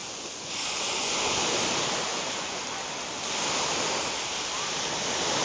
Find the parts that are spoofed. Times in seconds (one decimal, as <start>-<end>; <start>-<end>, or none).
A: 0.0-1.4; 2.1-2.6